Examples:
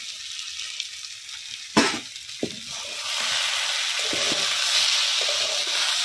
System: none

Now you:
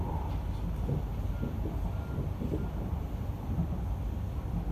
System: none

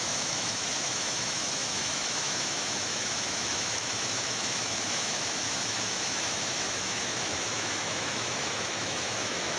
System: autoencoder, DAC-VAE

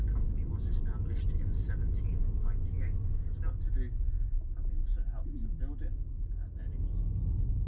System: none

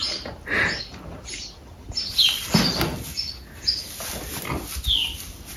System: none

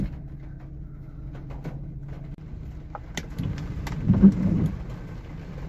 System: none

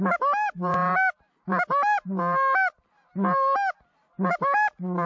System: none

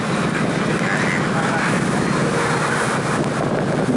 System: none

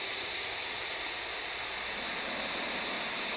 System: none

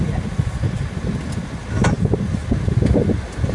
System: none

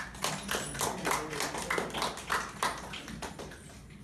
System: none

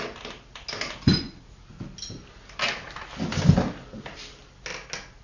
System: none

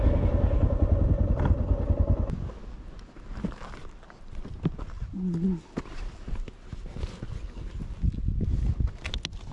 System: none